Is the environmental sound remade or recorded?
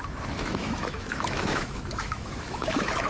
remade